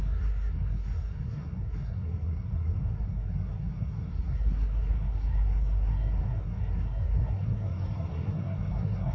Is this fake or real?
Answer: fake